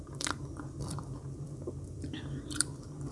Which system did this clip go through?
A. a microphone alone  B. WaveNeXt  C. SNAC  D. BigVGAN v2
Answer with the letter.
D